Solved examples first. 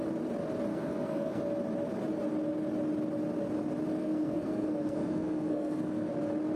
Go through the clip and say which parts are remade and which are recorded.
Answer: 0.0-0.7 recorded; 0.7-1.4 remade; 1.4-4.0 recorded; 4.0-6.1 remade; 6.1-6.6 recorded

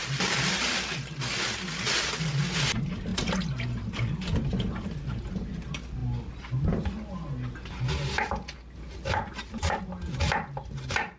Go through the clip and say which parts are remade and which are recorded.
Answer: 0.0-11.2 recorded

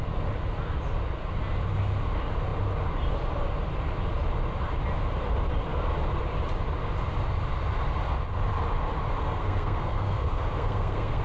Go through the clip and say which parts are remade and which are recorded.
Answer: 0.0-9.1 recorded; 9.1-11.2 remade

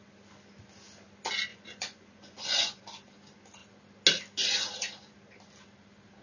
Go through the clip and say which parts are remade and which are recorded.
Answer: 0.0-1.5 recorded; 1.5-2.8 remade; 2.8-6.2 recorded

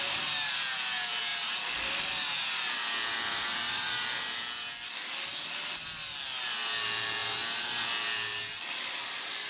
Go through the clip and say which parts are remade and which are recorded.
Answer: 0.0-9.5 recorded

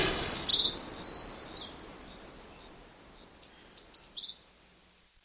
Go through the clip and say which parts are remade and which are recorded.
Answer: 0.0-0.5 remade; 0.5-3.6 recorded; 3.6-5.2 remade

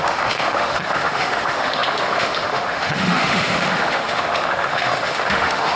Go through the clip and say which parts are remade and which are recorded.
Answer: 0.0-5.8 remade

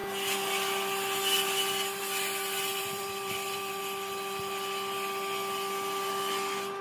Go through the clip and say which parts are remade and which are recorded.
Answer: 0.0-2.7 recorded; 2.7-3.8 remade; 3.8-6.8 recorded